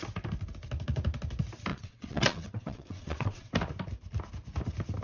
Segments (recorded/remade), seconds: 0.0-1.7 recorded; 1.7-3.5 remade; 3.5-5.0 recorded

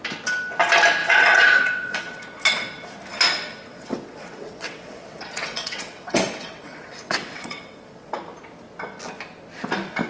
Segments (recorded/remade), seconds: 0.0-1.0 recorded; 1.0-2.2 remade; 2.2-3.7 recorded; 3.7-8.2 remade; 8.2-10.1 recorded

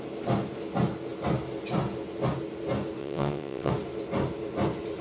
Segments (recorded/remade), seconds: 0.0-3.0 recorded; 3.0-3.7 remade; 3.7-5.0 recorded

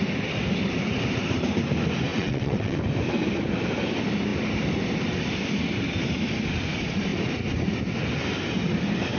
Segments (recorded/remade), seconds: 0.0-2.1 recorded; 2.1-2.8 remade; 2.8-9.2 recorded